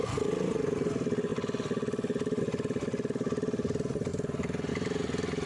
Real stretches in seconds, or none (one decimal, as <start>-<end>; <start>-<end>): 0.0-4.1; 4.7-5.5